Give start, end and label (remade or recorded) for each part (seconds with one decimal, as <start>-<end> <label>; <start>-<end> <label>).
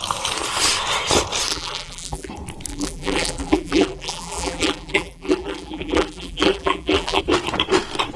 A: 0.0-1.5 recorded; 1.5-2.3 remade; 2.3-2.7 recorded; 2.7-7.2 remade; 7.2-8.2 recorded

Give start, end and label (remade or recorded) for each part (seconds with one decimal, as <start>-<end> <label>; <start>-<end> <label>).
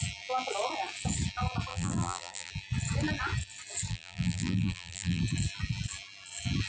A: 0.0-1.7 recorded; 1.7-2.5 remade; 2.5-3.9 recorded; 3.9-5.2 remade; 5.2-6.7 recorded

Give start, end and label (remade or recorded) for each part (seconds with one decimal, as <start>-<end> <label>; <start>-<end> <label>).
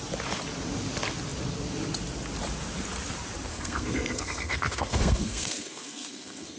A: 0.0-3.5 recorded; 3.5-6.6 remade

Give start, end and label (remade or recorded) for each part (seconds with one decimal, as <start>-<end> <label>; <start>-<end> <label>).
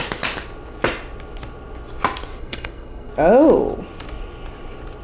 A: 0.0-2.4 recorded; 2.4-3.1 remade; 3.1-5.0 recorded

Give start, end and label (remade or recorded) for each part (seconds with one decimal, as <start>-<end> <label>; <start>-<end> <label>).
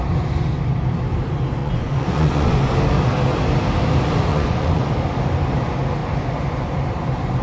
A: 0.0-1.6 recorded; 1.6-2.7 remade; 2.7-4.3 recorded; 4.3-4.9 remade; 4.9-7.4 recorded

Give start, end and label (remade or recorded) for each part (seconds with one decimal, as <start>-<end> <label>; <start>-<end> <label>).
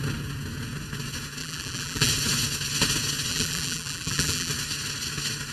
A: 0.0-1.4 recorded; 1.4-2.1 remade; 2.1-3.3 recorded; 3.3-4.5 remade; 4.5-5.5 recorded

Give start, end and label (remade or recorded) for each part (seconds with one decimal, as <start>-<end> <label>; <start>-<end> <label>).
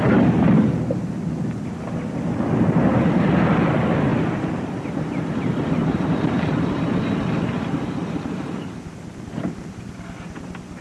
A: 0.0-4.1 recorded; 4.1-6.3 remade; 6.3-10.8 recorded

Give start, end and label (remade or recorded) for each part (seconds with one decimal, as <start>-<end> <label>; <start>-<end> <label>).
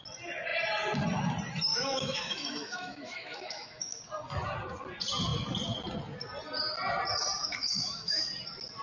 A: 0.0-1.7 recorded; 1.7-4.0 remade; 4.0-7.4 recorded; 7.4-8.3 remade; 8.3-8.8 recorded